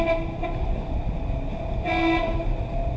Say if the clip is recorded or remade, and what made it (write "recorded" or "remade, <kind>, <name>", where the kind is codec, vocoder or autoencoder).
recorded